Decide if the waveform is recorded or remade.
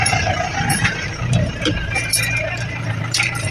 remade